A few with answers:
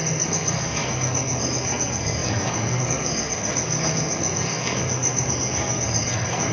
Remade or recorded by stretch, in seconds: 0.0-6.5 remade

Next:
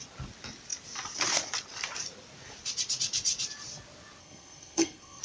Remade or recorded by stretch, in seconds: 0.0-4.2 recorded; 4.2-5.2 remade

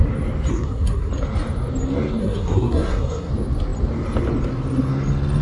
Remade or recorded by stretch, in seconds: 0.0-0.5 recorded; 0.5-1.1 remade; 1.1-2.2 recorded; 2.2-3.3 remade; 3.3-5.4 recorded

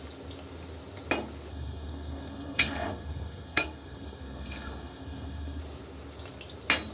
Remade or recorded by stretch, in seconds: 0.0-1.5 recorded; 1.5-5.6 remade; 5.6-6.9 recorded

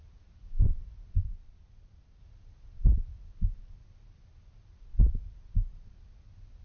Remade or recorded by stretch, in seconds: 0.0-6.6 recorded